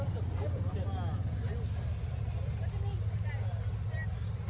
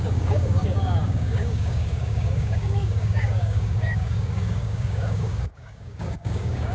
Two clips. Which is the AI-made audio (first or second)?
second